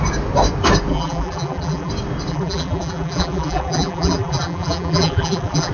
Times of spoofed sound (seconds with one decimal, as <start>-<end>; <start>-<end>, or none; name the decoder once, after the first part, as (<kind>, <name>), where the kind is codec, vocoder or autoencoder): 0.9-1.9 (vocoder, BigVGAN v2); 2.3-5.7